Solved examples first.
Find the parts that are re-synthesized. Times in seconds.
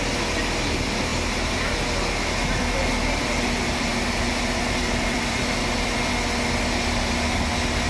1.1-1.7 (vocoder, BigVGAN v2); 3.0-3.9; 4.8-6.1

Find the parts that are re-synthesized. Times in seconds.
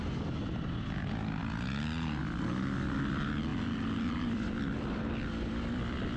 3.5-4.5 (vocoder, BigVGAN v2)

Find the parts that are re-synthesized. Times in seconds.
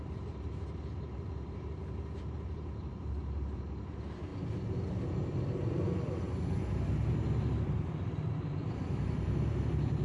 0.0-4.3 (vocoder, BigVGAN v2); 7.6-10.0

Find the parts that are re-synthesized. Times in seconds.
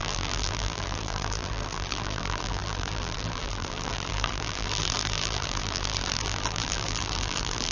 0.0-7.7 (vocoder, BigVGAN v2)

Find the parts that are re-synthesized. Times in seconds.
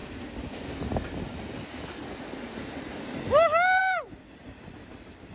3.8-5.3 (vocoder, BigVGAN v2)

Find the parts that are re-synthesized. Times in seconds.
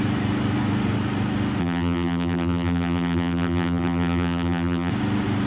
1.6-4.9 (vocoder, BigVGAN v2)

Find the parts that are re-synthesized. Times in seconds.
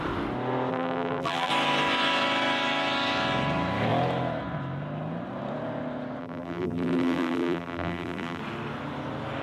0.7-1.5 (vocoder, BigVGAN v2); 6.2-8.4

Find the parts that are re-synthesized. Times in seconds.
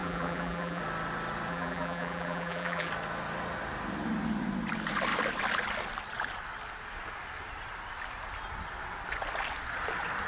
0.0-0.8 (vocoder, BigVGAN v2); 1.5-2.9